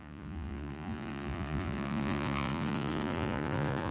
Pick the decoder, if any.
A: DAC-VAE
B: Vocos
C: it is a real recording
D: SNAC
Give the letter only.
B